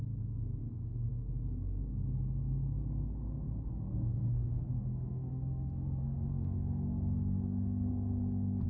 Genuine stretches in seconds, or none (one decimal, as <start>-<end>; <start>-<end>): 0.0-0.6; 1.1-3.7; 7.9-8.7